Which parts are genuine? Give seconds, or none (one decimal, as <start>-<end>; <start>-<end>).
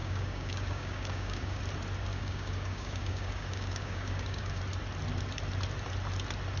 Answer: 1.6-2.1; 4.6-6.6